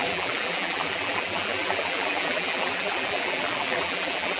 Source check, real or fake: fake